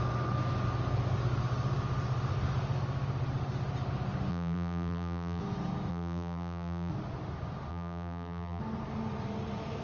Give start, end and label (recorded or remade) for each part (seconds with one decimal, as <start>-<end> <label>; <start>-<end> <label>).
0.0-4.3 recorded; 4.3-5.4 remade; 5.4-5.9 recorded; 5.9-6.9 remade; 6.9-7.7 recorded; 7.7-8.6 remade; 8.6-9.8 recorded